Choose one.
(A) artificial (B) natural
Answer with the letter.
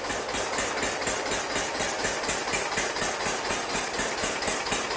B